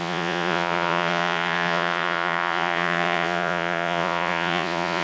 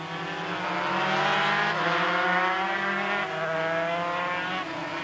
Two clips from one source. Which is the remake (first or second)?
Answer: first